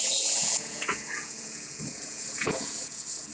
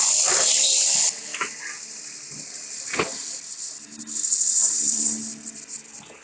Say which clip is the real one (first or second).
second